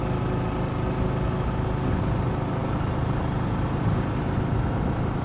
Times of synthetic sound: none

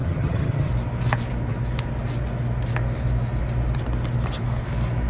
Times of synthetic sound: 0.0-0.7 (vocoder, HiFi-GAN)

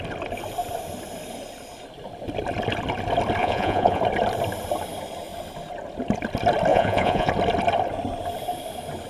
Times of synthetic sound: 3.4-4.0 (vocoder, Vocos); 6.7-7.3

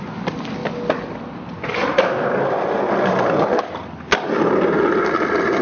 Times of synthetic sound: none

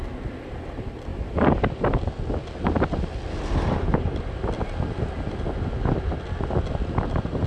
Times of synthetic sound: none

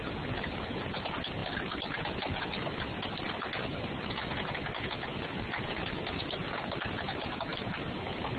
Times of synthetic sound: none